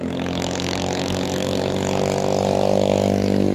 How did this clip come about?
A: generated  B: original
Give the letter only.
A